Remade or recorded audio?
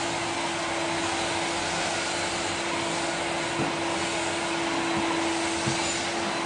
recorded